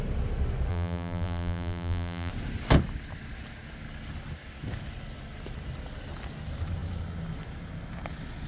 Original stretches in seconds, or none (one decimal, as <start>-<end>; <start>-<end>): 0.0-0.7; 2.3-8.5